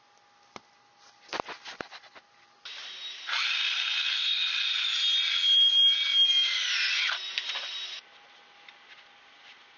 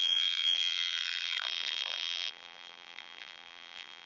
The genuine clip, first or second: first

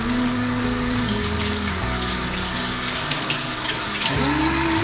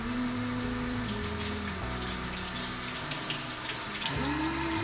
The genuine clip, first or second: second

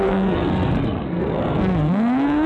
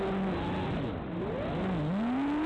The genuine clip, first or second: second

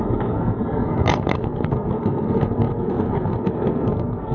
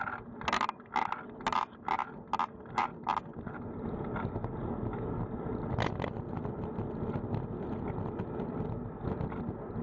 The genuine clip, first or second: second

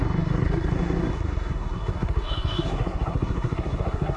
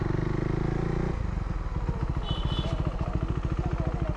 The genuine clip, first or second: second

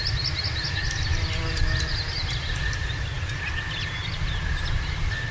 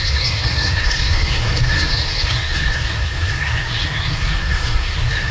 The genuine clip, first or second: first